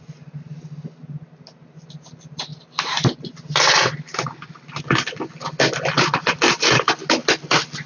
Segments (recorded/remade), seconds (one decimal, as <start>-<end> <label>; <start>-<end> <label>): 0.0-7.9 recorded